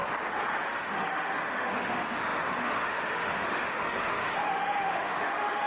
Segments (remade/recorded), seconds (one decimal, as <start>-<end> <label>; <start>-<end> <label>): 0.0-0.5 recorded; 0.5-5.7 remade